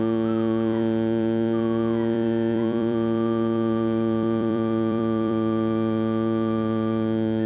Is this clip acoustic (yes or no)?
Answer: no